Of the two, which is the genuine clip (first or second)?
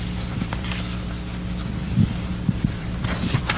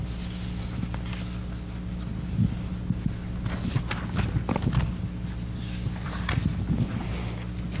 second